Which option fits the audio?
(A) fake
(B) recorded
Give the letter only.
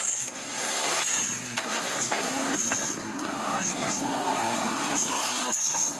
A